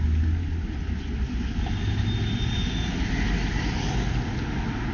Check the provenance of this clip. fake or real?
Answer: real